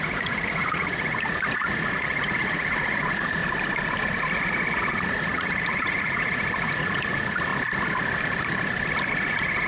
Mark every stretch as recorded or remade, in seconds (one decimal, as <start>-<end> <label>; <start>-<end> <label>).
0.0-3.4 remade; 3.4-4.3 recorded; 4.3-7.5 remade; 7.5-9.1 recorded; 9.1-9.7 remade